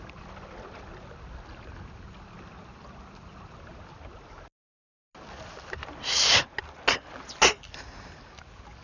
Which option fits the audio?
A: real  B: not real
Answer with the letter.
A